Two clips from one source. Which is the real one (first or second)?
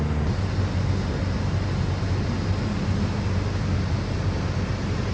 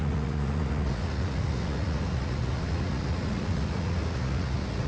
first